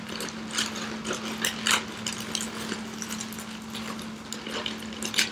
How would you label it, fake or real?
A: real